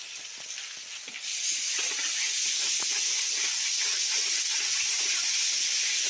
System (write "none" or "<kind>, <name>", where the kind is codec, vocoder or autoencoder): vocoder, BigVGAN v2